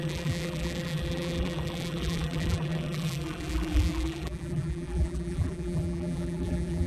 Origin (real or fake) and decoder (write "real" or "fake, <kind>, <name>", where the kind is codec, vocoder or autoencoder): fake, vocoder, BigVGAN v2